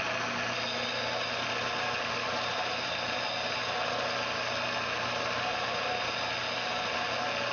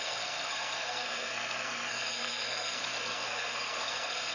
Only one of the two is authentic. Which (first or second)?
first